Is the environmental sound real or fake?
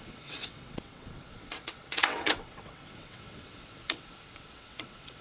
fake